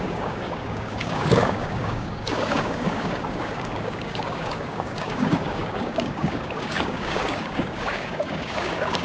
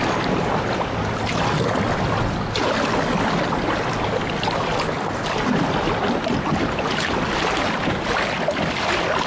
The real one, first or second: second